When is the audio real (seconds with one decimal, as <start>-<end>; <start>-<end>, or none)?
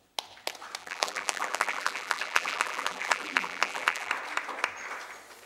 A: 0.0-0.8; 4.1-5.5